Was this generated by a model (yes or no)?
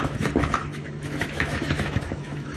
yes